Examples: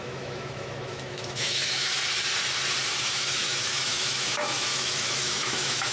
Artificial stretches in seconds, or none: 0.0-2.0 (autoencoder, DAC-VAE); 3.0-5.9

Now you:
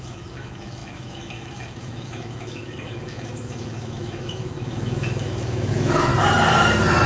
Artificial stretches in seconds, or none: 0.0-6.1 (autoencoder, DAC-VAE)

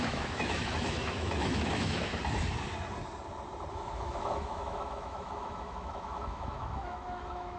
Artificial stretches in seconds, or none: 0.0-2.1 (autoencoder, DAC-VAE); 3.7-7.6

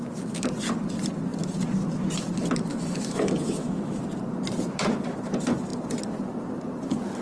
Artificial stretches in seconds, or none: 2.7-4.0 (autoencoder, DAC-VAE)

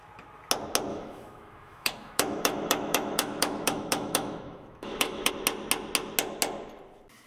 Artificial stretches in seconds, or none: 0.9-5.3 (autoencoder, DAC-VAE)

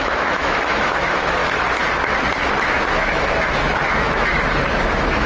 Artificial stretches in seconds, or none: 0.0-1.4 (autoencoder, DAC-VAE); 2.6-5.3

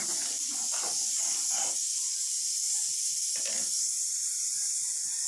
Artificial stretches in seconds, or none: none

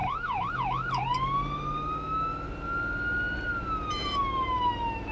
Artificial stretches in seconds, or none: 0.0-1.0 (autoencoder, DAC-VAE); 3.9-5.1